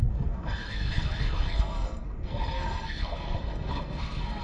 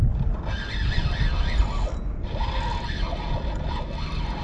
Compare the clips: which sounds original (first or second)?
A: second